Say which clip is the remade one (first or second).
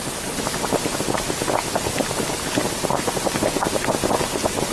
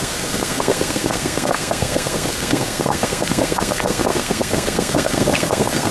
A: second